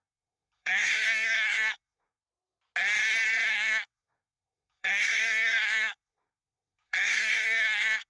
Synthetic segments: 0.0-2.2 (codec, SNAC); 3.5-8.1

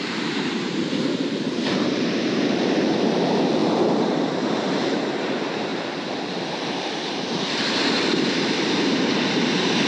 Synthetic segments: 0.0-9.9 (vocoder, BigVGAN v2)

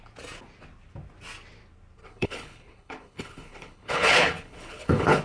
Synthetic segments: 2.0-5.2 (codec, HILCodec)

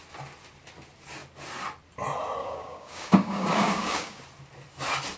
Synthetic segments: 2.4-4.2 (codec, DAC)